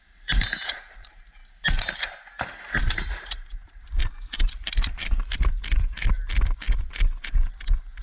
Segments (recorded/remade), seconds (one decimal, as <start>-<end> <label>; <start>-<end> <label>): 0.0-1.4 remade; 1.4-2.7 recorded; 2.7-4.0 remade; 4.0-8.0 recorded